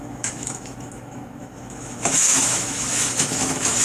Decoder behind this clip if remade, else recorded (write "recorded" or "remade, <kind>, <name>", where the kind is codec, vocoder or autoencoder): remade, autoencoder, DAC-VAE